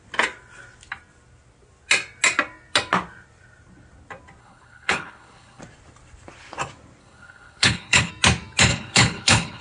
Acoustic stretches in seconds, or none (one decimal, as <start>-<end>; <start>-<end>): 0.0-4.4; 5.6-7.0; 8.1-8.7